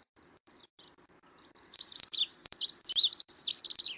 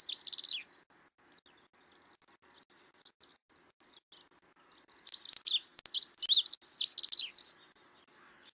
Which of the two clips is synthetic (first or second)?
first